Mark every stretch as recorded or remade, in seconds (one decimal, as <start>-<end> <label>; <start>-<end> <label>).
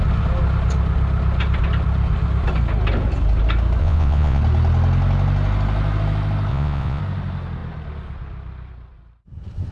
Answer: 0.0-3.8 recorded; 3.8-4.4 remade; 4.4-6.5 recorded; 6.5-7.0 remade; 7.0-9.7 recorded